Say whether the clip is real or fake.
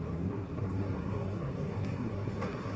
fake